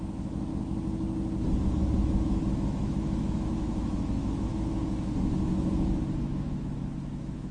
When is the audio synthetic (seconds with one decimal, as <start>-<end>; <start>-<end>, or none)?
0.0-0.5; 1.6-7.5